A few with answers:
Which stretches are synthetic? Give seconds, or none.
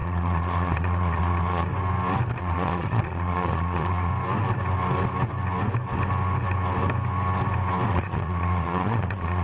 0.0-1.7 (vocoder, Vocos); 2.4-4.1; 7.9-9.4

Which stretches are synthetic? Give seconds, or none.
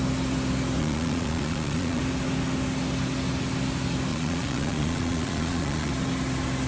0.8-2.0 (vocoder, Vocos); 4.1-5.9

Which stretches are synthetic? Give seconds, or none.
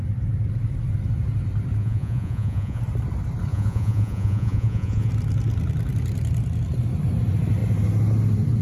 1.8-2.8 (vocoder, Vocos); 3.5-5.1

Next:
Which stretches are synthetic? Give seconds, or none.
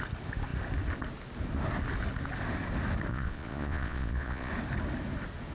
3.1-4.5 (vocoder, Vocos)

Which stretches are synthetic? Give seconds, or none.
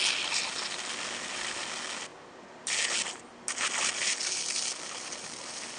none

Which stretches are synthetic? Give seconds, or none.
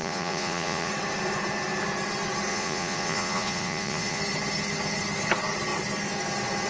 0.0-0.9 (vocoder, Vocos); 2.5-4.2